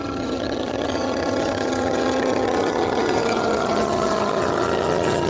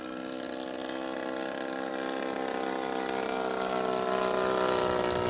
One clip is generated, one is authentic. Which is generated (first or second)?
first